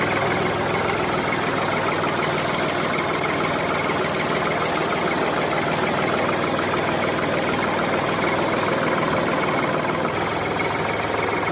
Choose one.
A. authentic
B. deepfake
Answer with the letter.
A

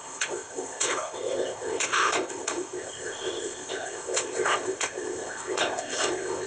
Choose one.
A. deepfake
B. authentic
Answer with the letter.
A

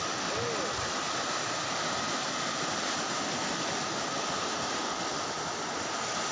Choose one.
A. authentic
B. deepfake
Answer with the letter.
A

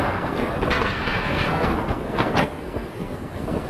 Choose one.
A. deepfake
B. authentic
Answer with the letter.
A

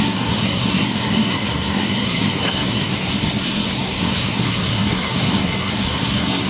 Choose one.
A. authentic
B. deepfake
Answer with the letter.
B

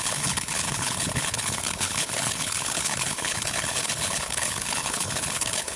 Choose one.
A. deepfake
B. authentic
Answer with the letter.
A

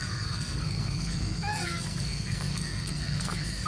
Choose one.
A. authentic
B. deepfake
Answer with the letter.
B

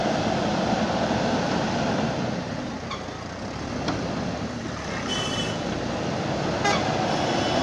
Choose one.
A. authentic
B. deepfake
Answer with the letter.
A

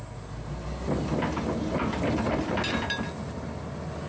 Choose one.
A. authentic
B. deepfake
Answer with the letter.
A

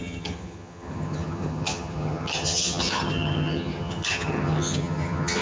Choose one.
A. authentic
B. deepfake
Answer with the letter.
B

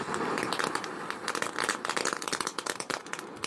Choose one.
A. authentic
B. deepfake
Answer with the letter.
A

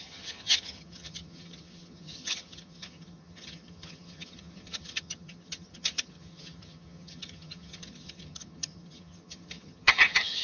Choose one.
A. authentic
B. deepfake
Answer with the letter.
B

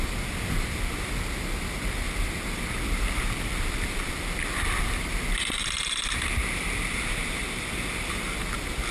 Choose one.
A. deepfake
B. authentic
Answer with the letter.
B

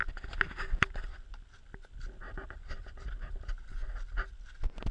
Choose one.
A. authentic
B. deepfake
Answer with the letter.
A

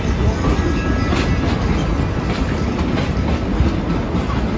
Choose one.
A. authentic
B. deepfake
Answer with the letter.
A